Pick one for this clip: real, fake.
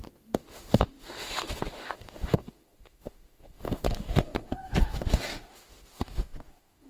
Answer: fake